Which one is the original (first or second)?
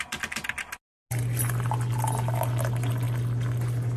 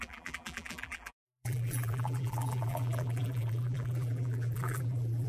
first